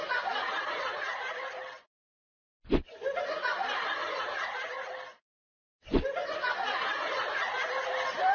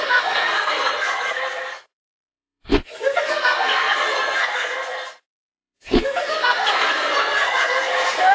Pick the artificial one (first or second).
second